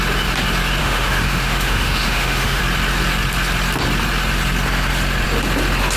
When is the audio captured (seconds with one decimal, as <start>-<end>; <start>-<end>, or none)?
0.0-0.8; 2.6-6.0

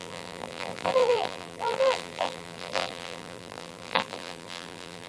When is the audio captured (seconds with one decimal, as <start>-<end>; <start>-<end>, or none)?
none

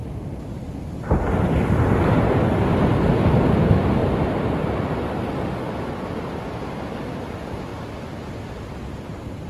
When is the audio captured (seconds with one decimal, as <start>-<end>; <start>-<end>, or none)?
0.0-9.5

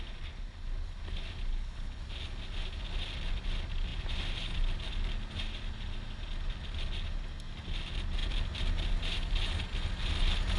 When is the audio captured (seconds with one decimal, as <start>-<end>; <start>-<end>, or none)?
0.0-1.5; 2.0-10.6

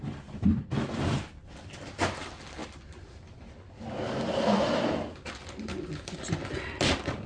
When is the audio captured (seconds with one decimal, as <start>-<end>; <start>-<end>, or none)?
0.0-7.3